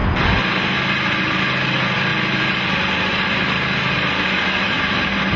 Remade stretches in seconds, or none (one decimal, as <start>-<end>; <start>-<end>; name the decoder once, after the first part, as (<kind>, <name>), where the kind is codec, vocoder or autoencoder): 2.1-4.8 (vocoder, BigVGAN v2)